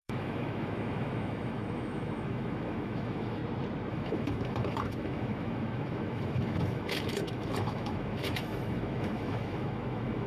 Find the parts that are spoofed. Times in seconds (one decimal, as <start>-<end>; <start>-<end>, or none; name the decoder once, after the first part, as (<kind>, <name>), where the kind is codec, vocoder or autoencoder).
0.0-3.4 (autoencoder, DAC-VAE); 3.9-10.3